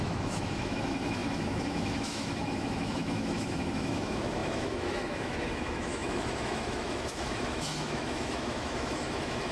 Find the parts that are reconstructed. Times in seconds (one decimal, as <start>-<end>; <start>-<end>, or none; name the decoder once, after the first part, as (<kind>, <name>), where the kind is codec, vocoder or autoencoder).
0.0-9.5 (autoencoder, DAC-VAE)